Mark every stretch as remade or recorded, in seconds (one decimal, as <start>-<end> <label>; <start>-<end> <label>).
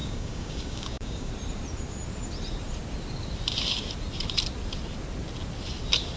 0.0-1.3 remade; 1.3-6.2 recorded